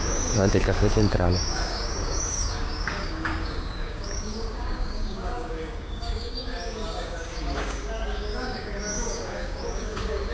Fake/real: fake